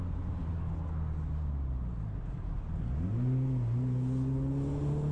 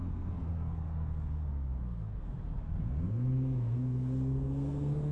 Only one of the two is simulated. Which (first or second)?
second